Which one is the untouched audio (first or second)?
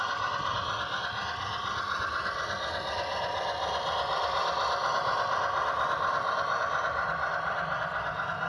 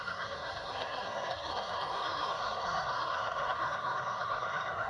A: first